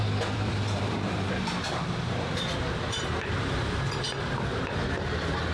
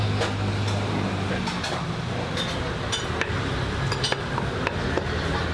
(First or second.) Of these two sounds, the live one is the second